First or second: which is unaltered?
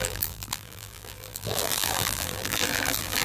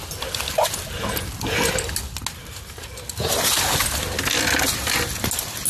second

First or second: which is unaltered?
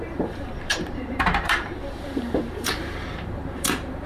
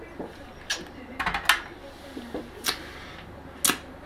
second